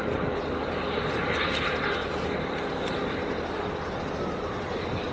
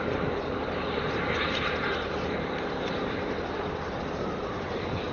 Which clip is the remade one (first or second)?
second